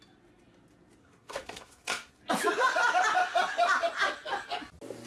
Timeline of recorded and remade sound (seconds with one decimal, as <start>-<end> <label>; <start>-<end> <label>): 0.0-1.0 recorded; 1.0-2.2 remade; 2.2-5.1 recorded